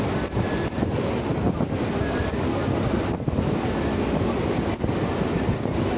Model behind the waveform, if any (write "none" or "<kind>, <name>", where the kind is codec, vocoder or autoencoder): none